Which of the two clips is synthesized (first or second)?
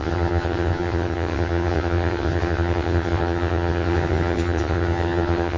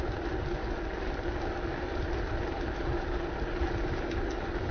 first